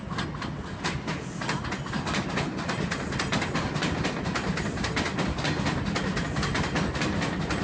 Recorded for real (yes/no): yes